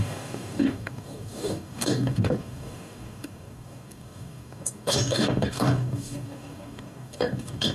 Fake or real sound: fake